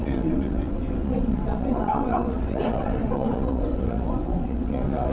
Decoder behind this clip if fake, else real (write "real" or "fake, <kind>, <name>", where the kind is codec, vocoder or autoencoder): fake, vocoder, WaveNeXt